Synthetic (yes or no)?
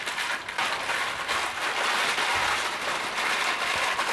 no